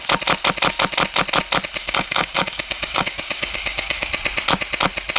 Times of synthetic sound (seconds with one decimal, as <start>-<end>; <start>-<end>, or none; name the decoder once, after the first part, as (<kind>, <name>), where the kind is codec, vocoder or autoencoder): 1.8-4.1 (codec, DAC)